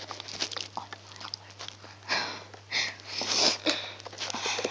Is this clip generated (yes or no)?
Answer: no